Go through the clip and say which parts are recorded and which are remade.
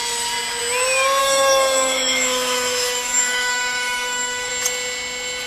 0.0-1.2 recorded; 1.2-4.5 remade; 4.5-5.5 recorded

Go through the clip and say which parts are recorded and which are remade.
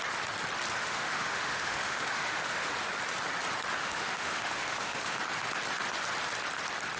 0.0-0.8 recorded; 0.8-2.7 remade; 2.7-3.8 recorded; 3.8-5.2 remade; 5.2-7.0 recorded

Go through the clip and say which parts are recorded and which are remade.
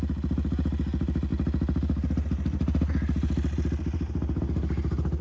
0.0-5.2 recorded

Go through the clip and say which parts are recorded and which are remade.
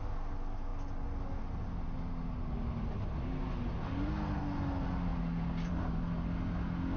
0.0-7.0 recorded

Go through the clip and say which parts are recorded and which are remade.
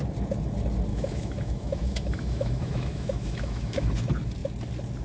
0.0-0.9 recorded; 0.9-3.9 remade; 3.9-5.0 recorded